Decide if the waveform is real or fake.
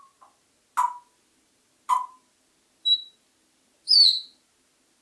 real